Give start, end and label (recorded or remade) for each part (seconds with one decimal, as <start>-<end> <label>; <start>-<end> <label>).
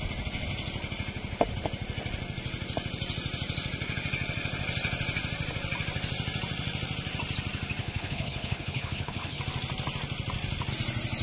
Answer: 0.0-7.8 recorded; 7.8-9.4 remade; 9.4-11.2 recorded